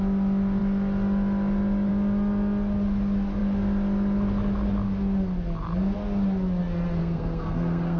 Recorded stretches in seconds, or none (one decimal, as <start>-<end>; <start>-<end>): 0.0-7.0